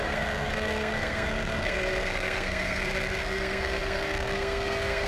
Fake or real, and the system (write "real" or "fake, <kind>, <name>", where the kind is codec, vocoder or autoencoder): fake, codec, SNAC